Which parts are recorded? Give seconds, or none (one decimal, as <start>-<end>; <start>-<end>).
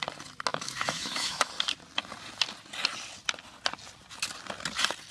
0.0-0.5; 1.5-5.1